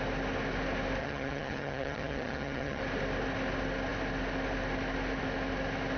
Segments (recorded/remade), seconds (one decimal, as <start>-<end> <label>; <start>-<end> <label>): 0.0-1.0 recorded; 1.0-2.8 remade; 2.8-6.0 recorded